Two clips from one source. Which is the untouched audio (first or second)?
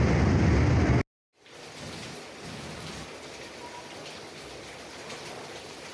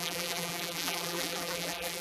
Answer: first